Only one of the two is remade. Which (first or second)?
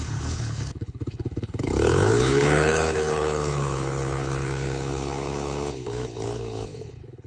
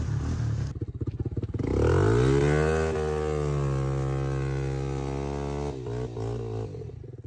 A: first